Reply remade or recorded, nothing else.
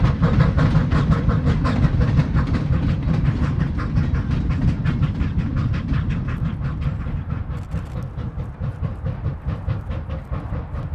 recorded